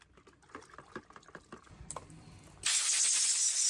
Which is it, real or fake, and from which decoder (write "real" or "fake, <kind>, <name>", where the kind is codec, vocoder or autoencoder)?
real